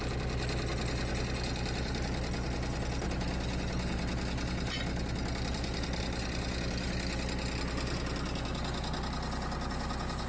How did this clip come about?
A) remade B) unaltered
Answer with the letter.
B